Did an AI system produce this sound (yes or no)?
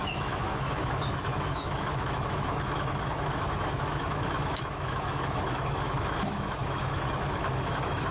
yes